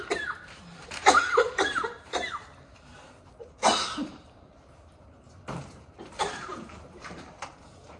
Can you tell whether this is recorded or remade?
remade